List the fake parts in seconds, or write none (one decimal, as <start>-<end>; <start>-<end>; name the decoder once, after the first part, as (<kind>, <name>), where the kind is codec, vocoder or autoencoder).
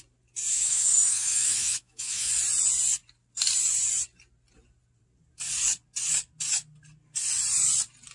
0.5-2.3 (autoencoder, DAC-VAE)